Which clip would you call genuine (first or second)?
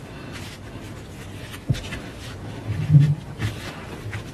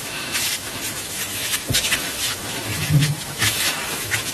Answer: first